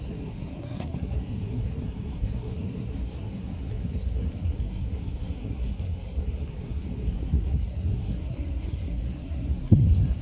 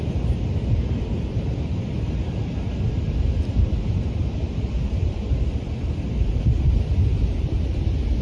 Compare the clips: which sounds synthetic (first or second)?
first